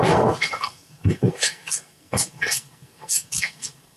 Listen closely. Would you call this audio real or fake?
fake